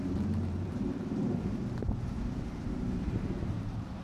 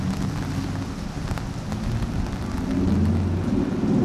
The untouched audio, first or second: second